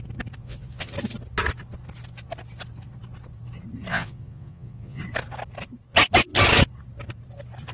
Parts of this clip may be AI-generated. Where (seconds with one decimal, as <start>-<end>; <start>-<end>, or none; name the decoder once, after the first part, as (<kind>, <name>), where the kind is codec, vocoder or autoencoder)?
0.4-0.9 (vocoder, Vocos); 3.9-5.0